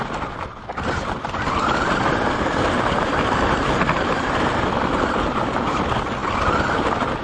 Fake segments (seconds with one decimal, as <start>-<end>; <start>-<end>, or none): none

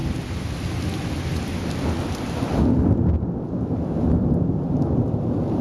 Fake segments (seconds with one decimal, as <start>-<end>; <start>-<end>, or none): none

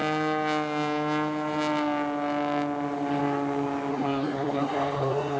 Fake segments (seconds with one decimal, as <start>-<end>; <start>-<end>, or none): 3.9-5.4

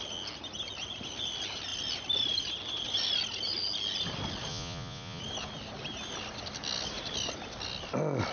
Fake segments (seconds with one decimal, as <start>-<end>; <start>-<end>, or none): 4.5-5.2

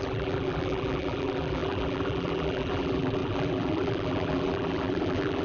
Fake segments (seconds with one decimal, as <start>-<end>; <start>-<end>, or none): 0.0-5.4